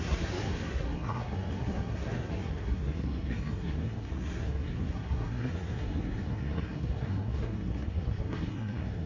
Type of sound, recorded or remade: remade